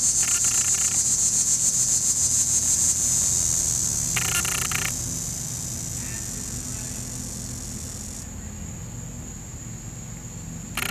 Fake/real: real